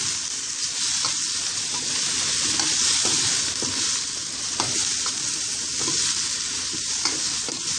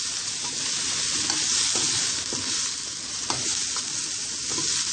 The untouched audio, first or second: second